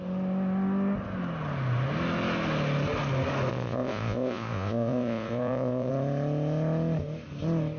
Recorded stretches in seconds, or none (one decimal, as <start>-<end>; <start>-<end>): 0.0-3.5; 5.9-7.8